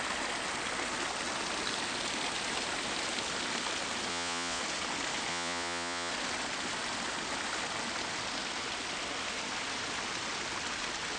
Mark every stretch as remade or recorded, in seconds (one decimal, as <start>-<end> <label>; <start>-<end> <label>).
0.0-4.1 recorded; 4.1-4.6 remade; 4.6-5.3 recorded; 5.3-6.1 remade; 6.1-11.2 recorded